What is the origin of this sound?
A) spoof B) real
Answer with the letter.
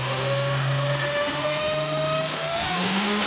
A